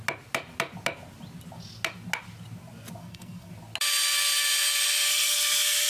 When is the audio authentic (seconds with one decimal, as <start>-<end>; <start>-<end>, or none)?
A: 0.0-3.0; 3.5-5.1